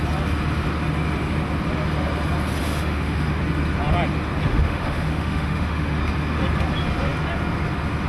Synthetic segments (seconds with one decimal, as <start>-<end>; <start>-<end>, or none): 2.6-3.4; 4.5-6.0